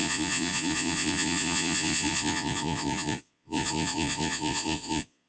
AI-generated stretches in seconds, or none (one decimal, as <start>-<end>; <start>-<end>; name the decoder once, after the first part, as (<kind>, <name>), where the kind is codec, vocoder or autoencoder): 0.0-5.3 (vocoder, Vocos)